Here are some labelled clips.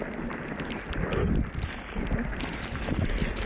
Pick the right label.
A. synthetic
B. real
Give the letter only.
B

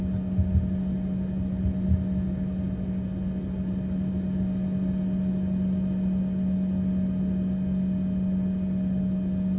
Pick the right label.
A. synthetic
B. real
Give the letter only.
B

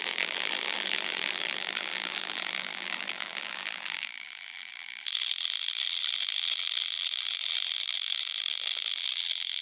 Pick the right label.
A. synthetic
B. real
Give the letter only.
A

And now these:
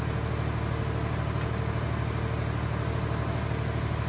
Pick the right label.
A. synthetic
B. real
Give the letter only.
B